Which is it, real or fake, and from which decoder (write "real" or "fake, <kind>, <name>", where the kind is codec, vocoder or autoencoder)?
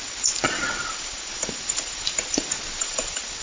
fake, vocoder, BigVGAN v2